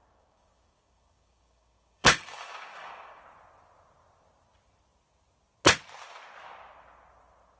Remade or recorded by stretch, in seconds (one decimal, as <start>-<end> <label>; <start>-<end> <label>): 0.0-3.2 remade; 3.2-7.6 recorded